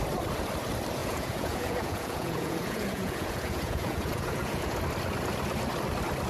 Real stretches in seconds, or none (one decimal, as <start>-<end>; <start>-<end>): 0.0-1.0; 4.8-6.3